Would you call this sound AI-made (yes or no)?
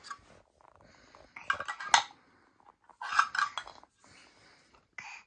no